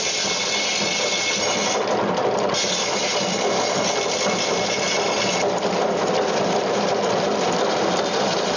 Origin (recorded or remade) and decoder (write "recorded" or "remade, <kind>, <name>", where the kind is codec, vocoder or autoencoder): recorded